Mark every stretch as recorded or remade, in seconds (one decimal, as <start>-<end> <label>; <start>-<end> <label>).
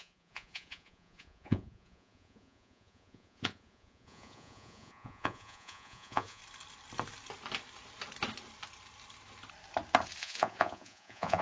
0.0-6.4 remade; 6.4-10.2 recorded; 10.2-11.4 remade